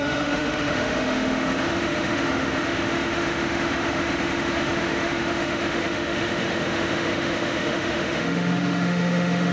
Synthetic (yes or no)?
yes